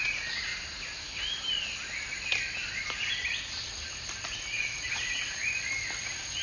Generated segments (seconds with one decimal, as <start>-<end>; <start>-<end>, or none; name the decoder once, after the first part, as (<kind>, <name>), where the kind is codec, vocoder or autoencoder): 0.0-0.5 (vocoder, Vocos); 4.3-5.4; 6.0-6.4